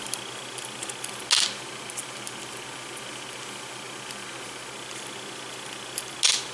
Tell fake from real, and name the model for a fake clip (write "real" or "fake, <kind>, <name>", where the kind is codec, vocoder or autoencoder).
real